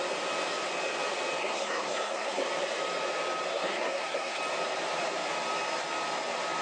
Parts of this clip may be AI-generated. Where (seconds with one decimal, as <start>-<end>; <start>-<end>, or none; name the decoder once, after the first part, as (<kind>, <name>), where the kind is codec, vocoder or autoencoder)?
1.4-2.4 (codec, SNAC); 3.5-4.4